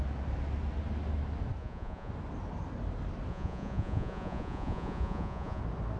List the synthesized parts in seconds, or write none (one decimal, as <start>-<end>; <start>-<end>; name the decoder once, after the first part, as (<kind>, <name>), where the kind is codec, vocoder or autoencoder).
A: 1.6-2.1 (vocoder, Vocos); 3.3-5.6